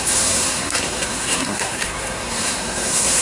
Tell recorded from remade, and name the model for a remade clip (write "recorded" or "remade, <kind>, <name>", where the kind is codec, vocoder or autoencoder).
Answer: remade, codec, SNAC